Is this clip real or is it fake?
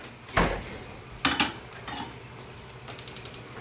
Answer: real